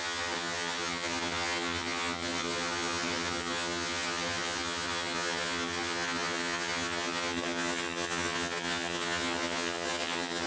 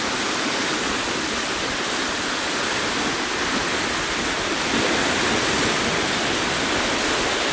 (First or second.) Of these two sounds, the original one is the second